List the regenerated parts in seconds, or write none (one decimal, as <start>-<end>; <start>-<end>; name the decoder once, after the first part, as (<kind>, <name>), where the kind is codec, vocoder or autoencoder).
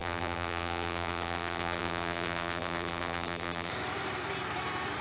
0.0-3.7 (vocoder, BigVGAN v2)